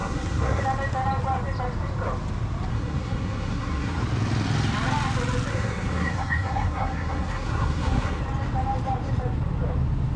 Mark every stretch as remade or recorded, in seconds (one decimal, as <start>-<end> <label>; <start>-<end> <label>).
0.0-0.6 remade; 0.6-2.7 recorded; 2.7-4.0 remade; 4.0-5.5 recorded; 5.5-8.2 remade; 8.2-10.2 recorded